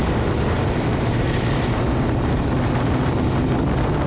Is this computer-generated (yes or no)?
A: no